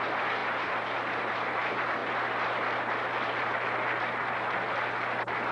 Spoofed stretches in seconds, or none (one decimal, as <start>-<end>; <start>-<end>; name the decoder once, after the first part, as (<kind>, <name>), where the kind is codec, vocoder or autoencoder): 0.0-2.0 (vocoder, BigVGAN v2)